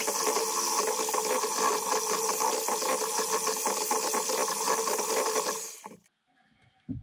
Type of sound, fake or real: real